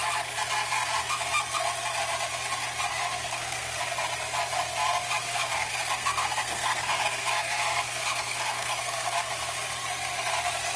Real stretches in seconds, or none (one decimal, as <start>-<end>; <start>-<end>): 0.0-2.9; 3.8-5.2; 9.3-10.8